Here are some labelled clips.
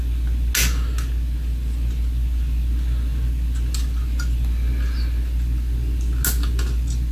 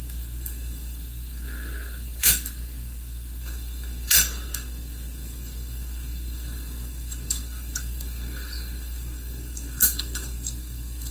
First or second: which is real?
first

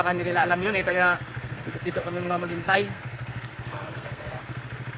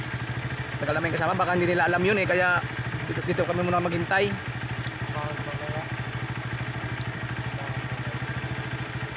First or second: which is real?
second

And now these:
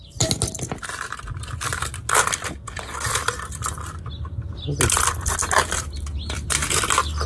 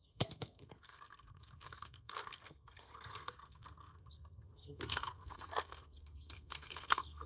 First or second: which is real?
first